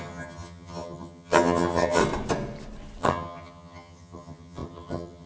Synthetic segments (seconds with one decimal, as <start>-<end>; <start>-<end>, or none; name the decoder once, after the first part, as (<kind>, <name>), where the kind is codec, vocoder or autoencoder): 0.0-2.0 (vocoder, HiFi-GAN); 3.0-5.3